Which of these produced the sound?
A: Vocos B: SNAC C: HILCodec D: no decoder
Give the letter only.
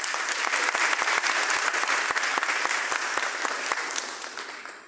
D